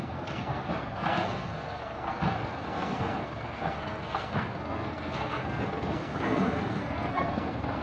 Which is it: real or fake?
fake